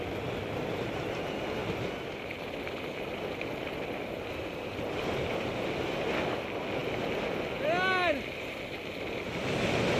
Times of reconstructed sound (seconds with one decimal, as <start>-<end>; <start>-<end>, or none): none